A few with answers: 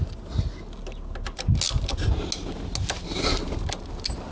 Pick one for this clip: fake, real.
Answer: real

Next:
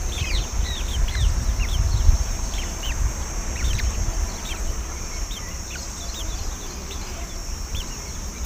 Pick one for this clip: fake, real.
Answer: fake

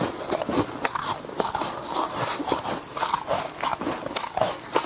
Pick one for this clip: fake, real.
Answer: real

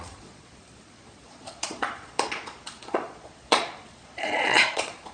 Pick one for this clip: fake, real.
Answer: fake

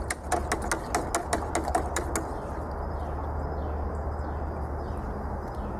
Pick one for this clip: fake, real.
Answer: real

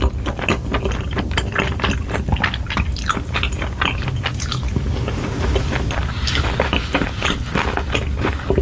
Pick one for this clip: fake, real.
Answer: real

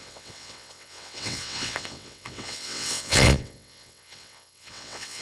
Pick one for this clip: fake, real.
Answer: fake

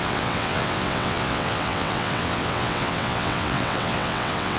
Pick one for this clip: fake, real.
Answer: fake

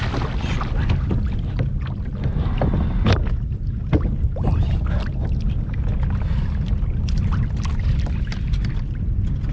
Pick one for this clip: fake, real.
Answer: real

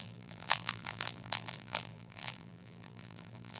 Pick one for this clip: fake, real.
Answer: fake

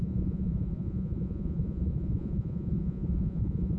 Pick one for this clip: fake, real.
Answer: fake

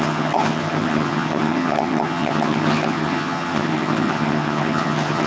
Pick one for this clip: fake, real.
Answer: fake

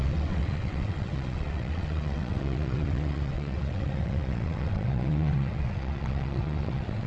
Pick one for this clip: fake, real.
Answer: fake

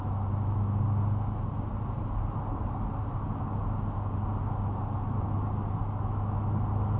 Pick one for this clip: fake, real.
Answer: real